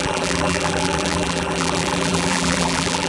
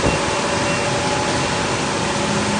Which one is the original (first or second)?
second